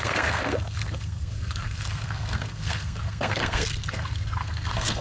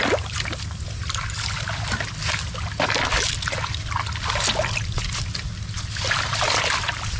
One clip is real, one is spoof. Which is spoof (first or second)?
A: first